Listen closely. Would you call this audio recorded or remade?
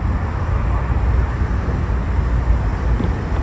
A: recorded